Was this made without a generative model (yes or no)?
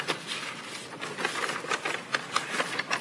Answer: yes